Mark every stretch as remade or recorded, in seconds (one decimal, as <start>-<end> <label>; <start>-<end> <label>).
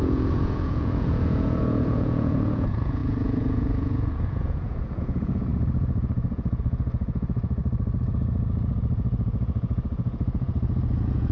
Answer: 0.0-7.6 remade; 7.6-8.1 recorded; 8.1-11.3 remade